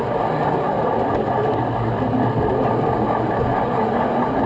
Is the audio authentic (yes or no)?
yes